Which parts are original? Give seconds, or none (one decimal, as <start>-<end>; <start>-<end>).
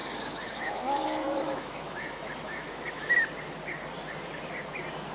3.1-5.1